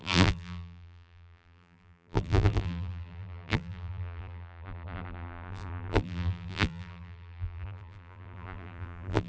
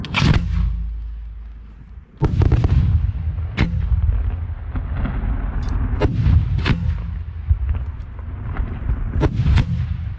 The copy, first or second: first